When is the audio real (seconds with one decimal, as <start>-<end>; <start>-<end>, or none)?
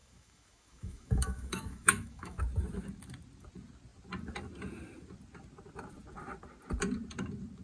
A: 2.4-7.6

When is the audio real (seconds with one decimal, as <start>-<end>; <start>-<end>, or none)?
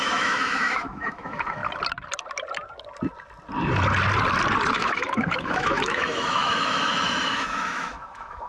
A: 1.6-4.7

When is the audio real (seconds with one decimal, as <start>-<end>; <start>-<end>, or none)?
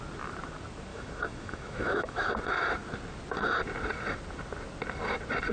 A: 0.0-0.9; 2.3-5.5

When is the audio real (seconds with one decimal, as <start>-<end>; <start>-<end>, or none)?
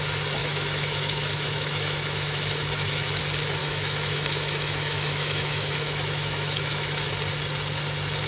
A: 0.0-0.4; 3.2-3.6; 7.1-8.3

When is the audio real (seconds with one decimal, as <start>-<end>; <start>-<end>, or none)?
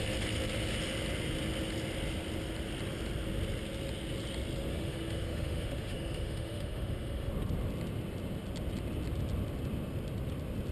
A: 0.0-4.7; 7.3-10.7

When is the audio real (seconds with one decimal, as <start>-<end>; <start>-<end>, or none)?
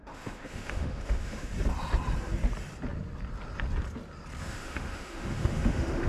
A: 1.5-4.4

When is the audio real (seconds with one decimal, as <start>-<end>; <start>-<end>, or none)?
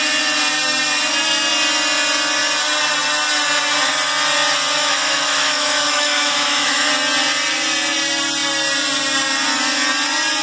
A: 0.0-4.8; 6.9-10.4